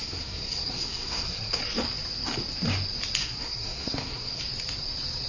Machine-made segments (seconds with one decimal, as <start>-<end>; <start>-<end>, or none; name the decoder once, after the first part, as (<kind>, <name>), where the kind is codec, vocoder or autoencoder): 0.0-1.6 (codec, SNAC); 3.2-4.4